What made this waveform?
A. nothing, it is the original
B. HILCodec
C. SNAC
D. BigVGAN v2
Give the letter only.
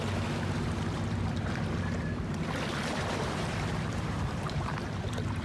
D